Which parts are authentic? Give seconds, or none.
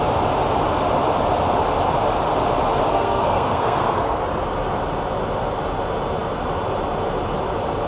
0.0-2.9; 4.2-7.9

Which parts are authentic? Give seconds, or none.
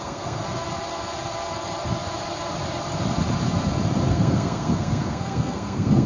0.4-4.1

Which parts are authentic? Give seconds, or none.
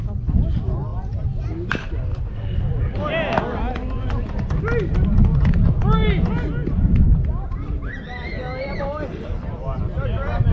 0.0-10.5